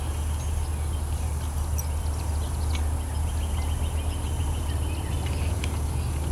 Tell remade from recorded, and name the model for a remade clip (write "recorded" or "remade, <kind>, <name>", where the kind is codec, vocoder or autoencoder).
recorded